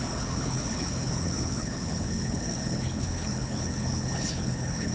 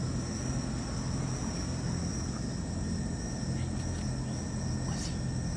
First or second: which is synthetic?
first